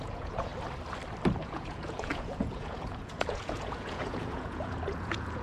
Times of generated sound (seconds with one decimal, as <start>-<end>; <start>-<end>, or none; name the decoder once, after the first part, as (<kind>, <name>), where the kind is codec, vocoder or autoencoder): 0.0-0.5 (vocoder, Vocos); 1.4-5.4